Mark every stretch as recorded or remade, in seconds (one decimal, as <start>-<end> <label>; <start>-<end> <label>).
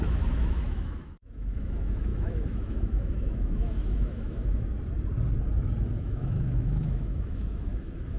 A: 0.0-4.7 remade; 4.7-6.0 recorded; 6.0-8.2 remade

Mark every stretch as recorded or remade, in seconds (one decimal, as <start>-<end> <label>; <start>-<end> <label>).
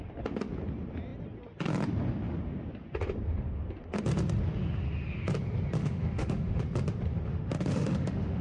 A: 0.0-5.8 recorded; 5.8-6.6 remade; 6.6-7.3 recorded; 7.3-8.4 remade